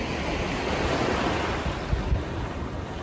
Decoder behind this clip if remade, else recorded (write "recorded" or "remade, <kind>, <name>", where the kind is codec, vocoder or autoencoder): recorded